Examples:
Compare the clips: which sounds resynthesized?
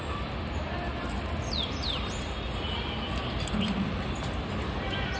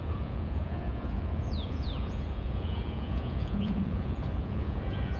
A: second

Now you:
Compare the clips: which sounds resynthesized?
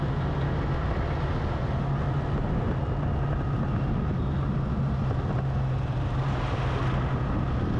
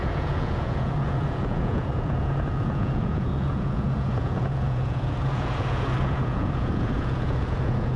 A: second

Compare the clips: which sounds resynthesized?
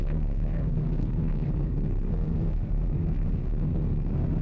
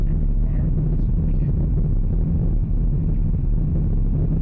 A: first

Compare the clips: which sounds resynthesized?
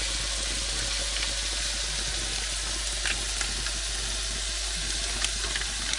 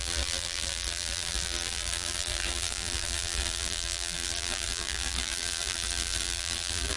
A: second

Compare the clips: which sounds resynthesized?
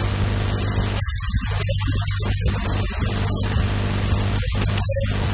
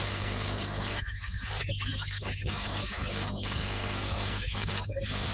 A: second